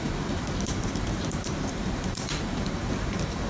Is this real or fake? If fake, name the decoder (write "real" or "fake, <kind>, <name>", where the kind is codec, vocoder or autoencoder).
fake, vocoder, BigVGAN v2